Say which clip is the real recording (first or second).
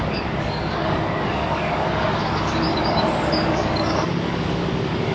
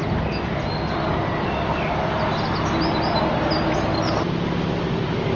second